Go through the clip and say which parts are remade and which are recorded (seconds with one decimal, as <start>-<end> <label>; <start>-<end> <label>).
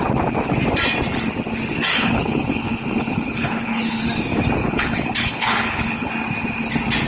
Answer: 0.0-1.9 recorded; 1.9-4.0 remade; 4.0-4.6 recorded; 4.6-6.1 remade; 6.1-7.1 recorded